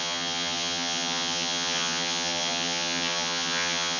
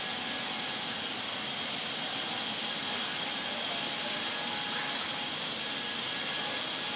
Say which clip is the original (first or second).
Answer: second